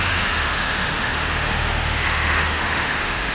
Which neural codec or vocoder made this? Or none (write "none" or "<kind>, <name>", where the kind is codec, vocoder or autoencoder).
autoencoder, DAC-VAE